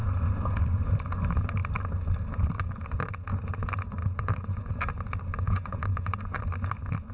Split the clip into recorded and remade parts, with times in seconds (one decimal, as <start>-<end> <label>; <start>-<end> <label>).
0.0-4.0 recorded; 4.0-4.7 remade; 4.7-5.3 recorded; 5.3-6.4 remade; 6.4-7.1 recorded

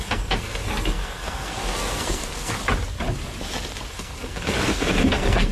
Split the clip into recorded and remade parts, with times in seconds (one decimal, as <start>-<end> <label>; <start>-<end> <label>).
0.0-2.6 remade; 2.6-3.9 recorded; 3.9-5.5 remade